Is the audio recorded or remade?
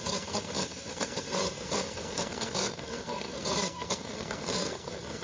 remade